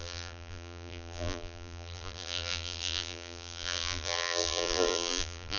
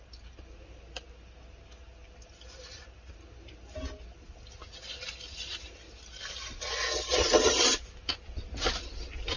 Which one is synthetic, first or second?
first